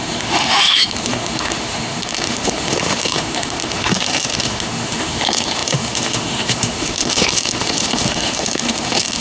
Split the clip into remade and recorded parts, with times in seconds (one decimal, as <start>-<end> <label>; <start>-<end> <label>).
0.0-9.2 remade